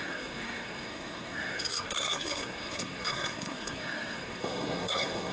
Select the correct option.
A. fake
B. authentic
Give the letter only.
A